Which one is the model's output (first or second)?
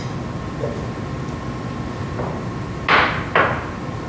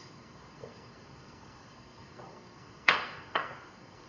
second